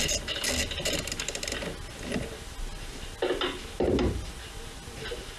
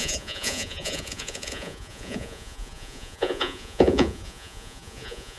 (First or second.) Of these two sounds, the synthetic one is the second